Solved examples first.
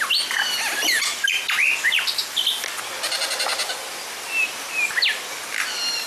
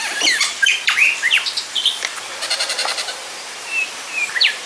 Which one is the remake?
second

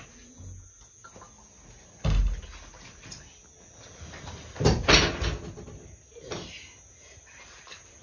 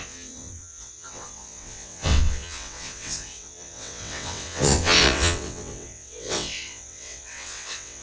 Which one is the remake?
second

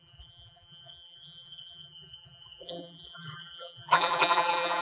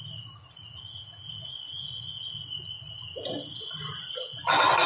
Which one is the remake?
first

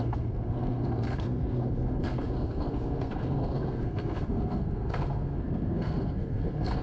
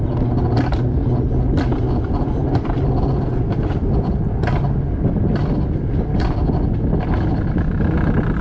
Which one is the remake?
first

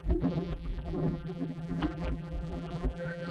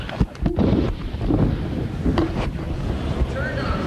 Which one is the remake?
first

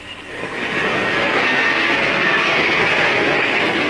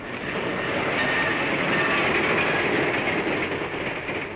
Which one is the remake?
first